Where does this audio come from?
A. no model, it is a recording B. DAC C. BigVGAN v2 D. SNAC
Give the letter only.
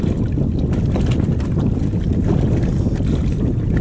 A